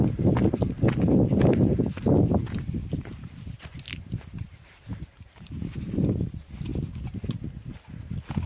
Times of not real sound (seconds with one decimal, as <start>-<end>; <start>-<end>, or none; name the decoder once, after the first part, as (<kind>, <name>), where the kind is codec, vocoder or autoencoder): 2.8-5.7 (vocoder, BigVGAN v2)